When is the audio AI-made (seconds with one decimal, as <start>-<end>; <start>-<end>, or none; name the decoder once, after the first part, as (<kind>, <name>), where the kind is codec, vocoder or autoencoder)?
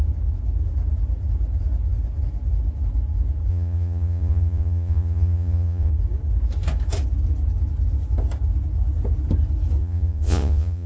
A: 3.5-5.9 (vocoder, Vocos); 9.8-10.9